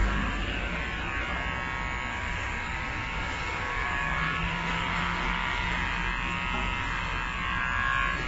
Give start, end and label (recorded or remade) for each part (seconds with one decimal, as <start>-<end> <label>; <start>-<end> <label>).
0.0-0.8 remade; 0.8-2.1 recorded; 2.1-5.7 remade; 5.7-8.3 recorded